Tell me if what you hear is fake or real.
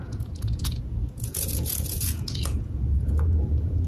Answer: fake